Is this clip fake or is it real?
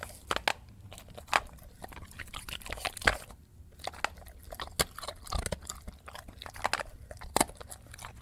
real